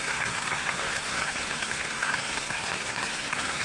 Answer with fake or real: fake